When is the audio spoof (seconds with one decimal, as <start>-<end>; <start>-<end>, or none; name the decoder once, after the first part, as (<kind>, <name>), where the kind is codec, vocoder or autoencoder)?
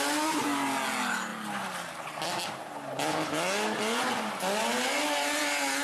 none